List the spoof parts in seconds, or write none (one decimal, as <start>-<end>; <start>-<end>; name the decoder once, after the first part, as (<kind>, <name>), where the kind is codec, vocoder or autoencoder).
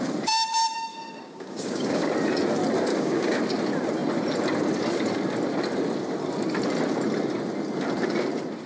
0.9-2.1 (codec, DAC); 2.9-3.4